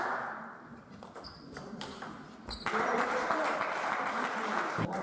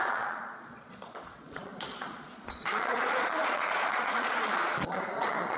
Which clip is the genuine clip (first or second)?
first